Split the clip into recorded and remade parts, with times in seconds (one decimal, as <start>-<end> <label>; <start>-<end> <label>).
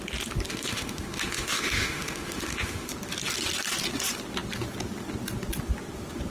0.0-0.5 recorded; 0.5-2.9 remade; 2.9-6.3 recorded